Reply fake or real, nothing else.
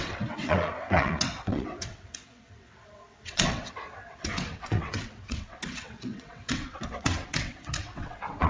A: fake